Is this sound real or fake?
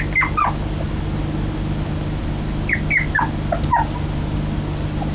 real